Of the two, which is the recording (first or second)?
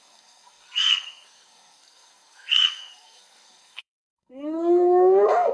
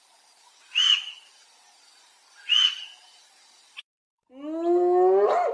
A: second